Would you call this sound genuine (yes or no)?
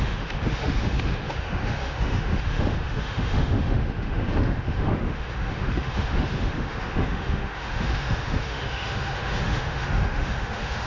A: no